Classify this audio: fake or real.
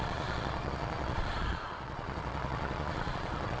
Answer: fake